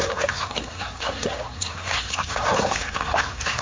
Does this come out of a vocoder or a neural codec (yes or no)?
yes